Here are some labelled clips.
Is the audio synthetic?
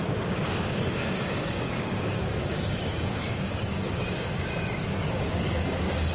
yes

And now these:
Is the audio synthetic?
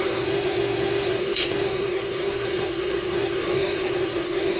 yes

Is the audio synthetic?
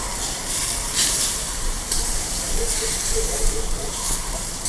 yes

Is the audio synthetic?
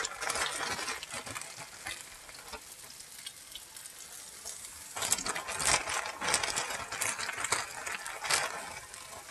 no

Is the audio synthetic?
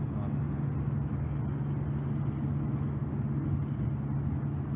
no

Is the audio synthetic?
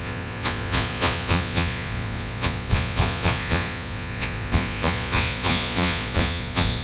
yes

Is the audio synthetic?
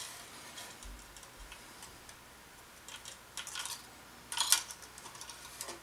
no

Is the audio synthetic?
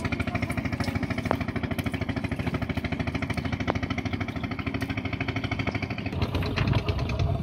no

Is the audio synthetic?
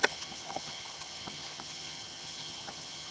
yes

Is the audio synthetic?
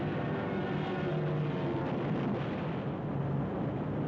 no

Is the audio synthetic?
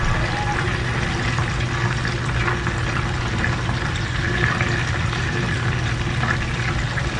no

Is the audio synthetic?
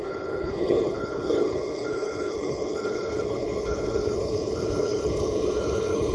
yes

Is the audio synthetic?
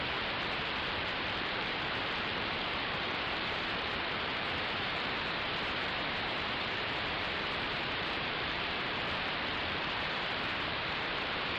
yes